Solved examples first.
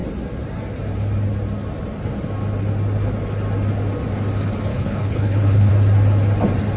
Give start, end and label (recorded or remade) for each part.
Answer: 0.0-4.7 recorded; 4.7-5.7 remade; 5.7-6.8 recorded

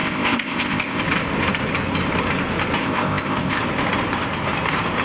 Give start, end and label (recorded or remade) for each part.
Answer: 0.0-1.0 remade; 1.0-2.8 recorded; 2.8-3.6 remade; 3.6-5.0 recorded

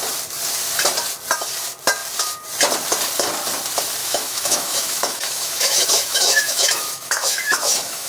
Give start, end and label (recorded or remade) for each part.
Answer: 0.0-4.0 recorded; 4.0-8.1 remade

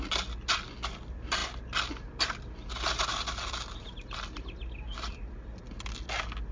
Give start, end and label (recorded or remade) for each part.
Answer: 0.0-6.5 recorded